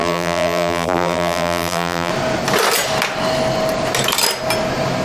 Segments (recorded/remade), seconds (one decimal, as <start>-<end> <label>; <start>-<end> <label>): 0.0-2.1 remade; 2.1-5.0 recorded